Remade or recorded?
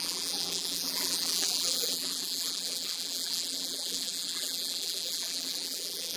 remade